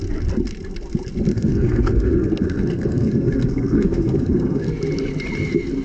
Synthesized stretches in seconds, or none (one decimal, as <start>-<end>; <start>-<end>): 1.3-4.8